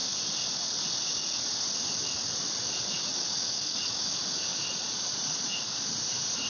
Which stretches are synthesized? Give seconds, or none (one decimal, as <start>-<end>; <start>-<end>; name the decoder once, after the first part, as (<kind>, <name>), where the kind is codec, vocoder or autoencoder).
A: 4.5-5.5 (vocoder, Vocos)